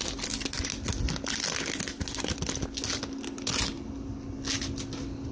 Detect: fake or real real